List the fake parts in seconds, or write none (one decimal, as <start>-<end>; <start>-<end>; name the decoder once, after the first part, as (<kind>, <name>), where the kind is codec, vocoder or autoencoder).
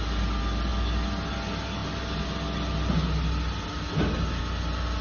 none